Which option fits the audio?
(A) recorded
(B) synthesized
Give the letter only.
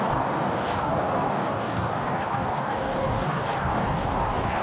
B